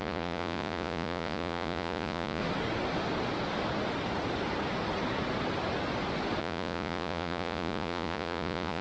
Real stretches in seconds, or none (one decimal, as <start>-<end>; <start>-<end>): 2.4-6.4